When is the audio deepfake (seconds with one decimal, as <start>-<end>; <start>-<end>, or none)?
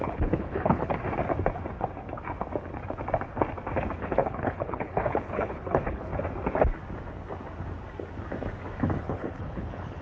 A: 0.0-0.9; 4.0-6.1; 9.0-10.0